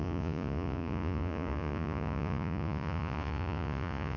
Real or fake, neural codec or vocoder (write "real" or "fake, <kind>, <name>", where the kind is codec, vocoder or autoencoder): fake, vocoder, Vocos